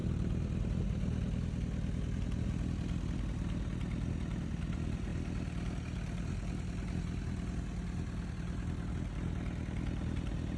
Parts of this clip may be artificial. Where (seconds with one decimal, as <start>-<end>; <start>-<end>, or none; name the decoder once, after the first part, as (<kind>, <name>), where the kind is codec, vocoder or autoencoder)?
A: none